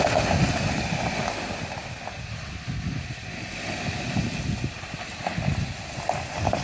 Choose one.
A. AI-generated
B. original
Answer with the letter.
B